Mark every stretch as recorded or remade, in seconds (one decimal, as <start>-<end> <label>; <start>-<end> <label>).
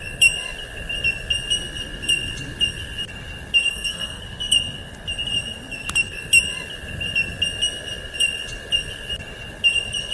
0.0-3.7 recorded; 3.7-4.2 remade; 4.2-10.1 recorded